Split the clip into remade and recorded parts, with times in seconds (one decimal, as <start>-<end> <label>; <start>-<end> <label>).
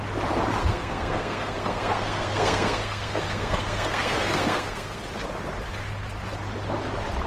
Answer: 0.0-0.6 recorded; 0.6-5.0 remade; 5.0-7.3 recorded